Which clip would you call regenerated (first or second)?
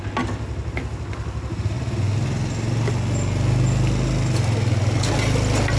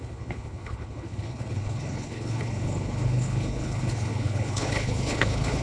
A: second